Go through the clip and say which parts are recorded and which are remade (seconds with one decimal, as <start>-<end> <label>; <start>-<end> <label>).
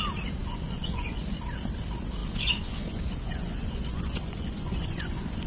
0.0-0.4 recorded; 0.4-1.2 remade; 1.2-2.2 recorded; 2.2-5.5 remade